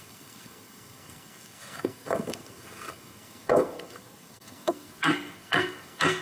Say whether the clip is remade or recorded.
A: remade